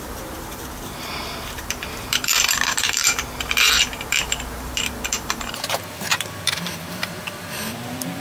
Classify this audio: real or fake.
fake